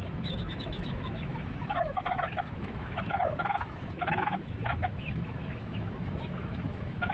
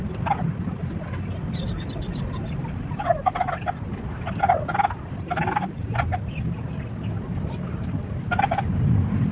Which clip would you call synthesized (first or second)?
first